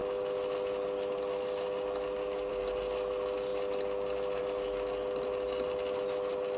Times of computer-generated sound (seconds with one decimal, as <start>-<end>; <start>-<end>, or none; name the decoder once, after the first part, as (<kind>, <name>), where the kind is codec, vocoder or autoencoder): none